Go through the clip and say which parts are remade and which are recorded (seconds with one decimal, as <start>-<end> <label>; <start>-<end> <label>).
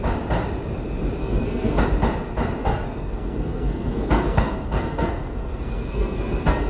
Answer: 0.0-1.2 recorded; 1.2-1.8 remade; 1.8-2.6 recorded; 2.6-6.7 remade